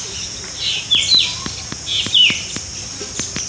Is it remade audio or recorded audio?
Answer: recorded